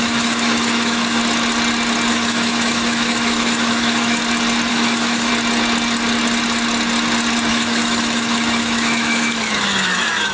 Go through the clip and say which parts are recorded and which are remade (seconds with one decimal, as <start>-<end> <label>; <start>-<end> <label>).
0.0-1.2 remade; 1.2-2.1 recorded; 2.1-4.2 remade; 4.2-4.7 recorded; 4.7-5.3 remade; 5.3-7.5 recorded; 7.5-10.3 remade

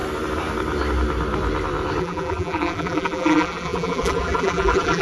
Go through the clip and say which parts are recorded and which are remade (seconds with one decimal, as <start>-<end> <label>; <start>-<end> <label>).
0.0-2.0 recorded; 2.0-5.0 remade

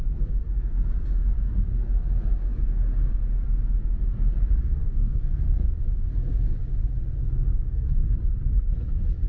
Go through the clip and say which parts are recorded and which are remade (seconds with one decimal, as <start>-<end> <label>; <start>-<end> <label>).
0.0-4.8 recorded; 4.8-5.4 remade; 5.4-7.5 recorded; 7.5-8.1 remade; 8.1-9.3 recorded

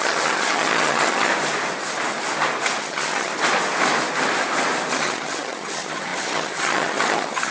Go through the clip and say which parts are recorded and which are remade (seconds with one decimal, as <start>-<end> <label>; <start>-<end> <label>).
0.0-1.3 remade; 1.3-2.8 recorded; 2.8-3.3 remade; 3.3-4.9 recorded; 4.9-7.5 remade

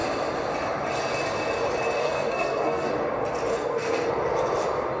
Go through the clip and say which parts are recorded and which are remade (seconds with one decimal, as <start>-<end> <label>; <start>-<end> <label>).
0.0-2.0 recorded; 2.0-2.9 remade; 2.9-3.5 recorded; 3.5-4.1 remade; 4.1-5.0 recorded

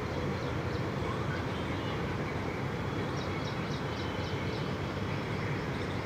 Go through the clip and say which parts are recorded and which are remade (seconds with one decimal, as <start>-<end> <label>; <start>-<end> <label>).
0.0-0.4 remade; 0.4-2.0 recorded; 2.0-6.1 remade

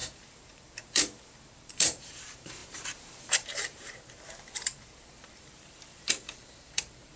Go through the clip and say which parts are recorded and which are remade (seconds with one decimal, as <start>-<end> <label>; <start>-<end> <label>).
0.0-7.2 remade

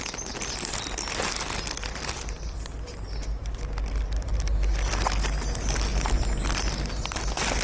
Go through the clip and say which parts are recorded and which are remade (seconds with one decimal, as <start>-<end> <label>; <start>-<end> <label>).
0.0-7.6 recorded